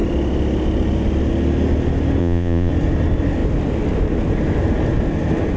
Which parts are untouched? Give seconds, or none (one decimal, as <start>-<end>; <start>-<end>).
0.0-2.2; 2.7-5.6